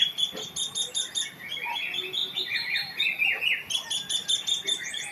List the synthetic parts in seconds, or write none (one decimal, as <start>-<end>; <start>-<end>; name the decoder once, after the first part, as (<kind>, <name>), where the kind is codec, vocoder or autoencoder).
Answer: none